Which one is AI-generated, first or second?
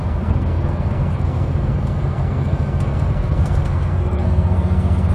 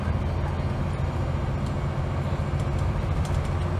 first